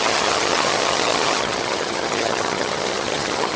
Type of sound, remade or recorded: remade